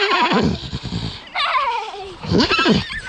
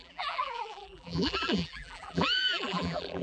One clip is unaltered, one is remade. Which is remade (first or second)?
second